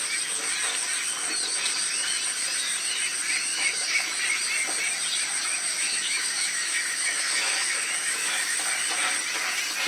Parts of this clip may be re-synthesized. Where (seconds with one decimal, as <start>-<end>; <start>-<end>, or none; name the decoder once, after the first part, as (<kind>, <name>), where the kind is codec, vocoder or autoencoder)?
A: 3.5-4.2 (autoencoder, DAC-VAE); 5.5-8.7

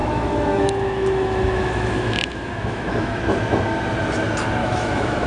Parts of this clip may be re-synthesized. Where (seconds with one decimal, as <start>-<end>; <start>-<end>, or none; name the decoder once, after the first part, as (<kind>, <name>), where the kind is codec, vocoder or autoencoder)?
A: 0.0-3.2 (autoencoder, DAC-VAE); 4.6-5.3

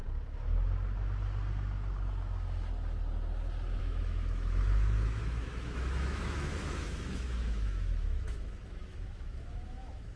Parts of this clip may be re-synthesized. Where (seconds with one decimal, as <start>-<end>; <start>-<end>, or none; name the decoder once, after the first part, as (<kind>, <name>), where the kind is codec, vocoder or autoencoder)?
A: 3.8-10.2 (autoencoder, DAC-VAE)